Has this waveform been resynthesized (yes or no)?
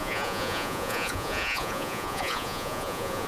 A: yes